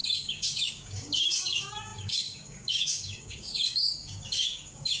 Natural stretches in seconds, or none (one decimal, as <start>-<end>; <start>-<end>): none